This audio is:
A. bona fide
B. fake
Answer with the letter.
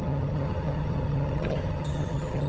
B